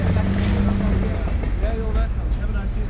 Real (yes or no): yes